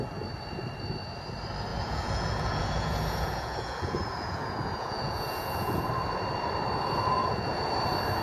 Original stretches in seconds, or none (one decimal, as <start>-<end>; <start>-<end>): 0.0-1.7; 5.9-7.2; 7.7-8.2